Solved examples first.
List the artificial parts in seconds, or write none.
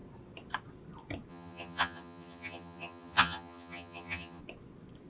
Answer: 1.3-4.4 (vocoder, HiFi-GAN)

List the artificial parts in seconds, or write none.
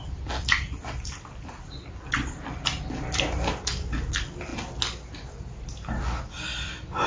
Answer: none